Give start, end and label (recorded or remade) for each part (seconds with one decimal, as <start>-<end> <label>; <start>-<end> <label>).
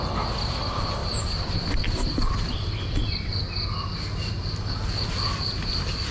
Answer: 0.0-6.1 recorded